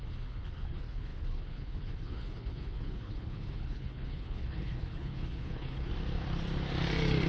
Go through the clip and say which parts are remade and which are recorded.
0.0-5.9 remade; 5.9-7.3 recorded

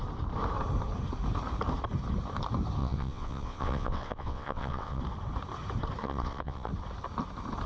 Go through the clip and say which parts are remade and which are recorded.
0.0-2.8 recorded; 2.8-5.0 remade; 5.0-6.0 recorded; 6.0-6.7 remade; 6.7-7.7 recorded

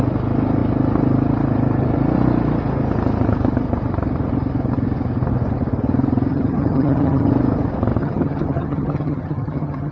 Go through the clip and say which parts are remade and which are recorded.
0.0-6.3 recorded; 6.3-7.3 remade; 7.3-8.0 recorded; 8.0-9.9 remade

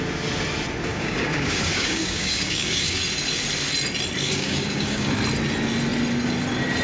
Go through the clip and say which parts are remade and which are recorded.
0.0-0.9 recorded; 0.9-3.0 remade; 3.0-4.2 recorded; 4.2-5.1 remade; 5.1-6.8 recorded

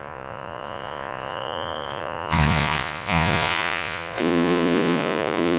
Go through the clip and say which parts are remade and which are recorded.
0.0-5.6 remade

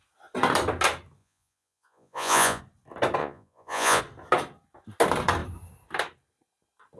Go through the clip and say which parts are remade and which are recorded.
0.0-1.2 recorded; 1.2-2.6 remade; 2.6-3.2 recorded; 3.2-4.0 remade; 4.0-7.0 recorded

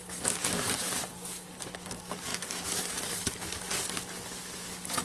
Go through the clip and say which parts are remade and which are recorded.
0.0-5.0 remade

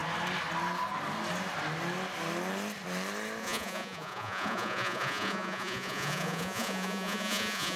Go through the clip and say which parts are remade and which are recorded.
0.0-3.4 recorded; 3.4-7.8 remade